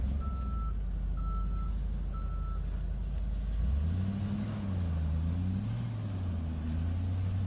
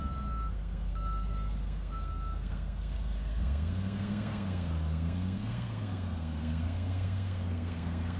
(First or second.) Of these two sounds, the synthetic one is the second